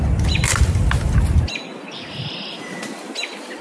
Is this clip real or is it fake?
real